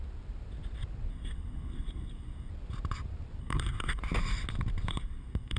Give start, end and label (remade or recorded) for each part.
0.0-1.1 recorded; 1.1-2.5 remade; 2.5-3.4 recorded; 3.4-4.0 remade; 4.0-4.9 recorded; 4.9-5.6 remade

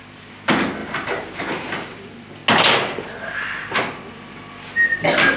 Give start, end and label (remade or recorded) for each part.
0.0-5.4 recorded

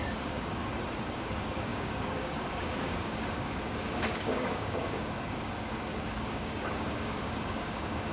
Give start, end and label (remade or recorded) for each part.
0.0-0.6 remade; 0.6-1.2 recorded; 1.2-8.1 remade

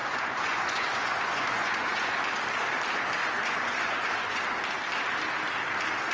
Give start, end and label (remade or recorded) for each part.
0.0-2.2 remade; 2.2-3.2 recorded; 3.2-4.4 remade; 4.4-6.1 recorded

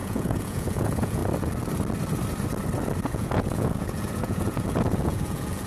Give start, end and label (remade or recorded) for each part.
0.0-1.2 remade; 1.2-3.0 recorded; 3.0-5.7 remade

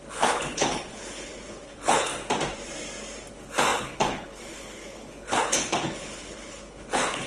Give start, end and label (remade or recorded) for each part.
0.0-2.1 remade; 2.1-3.3 recorded; 3.3-7.3 remade